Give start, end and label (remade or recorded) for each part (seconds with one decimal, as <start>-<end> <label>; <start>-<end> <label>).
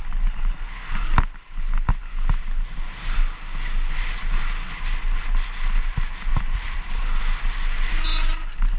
0.0-6.3 recorded; 6.3-7.2 remade; 7.2-8.8 recorded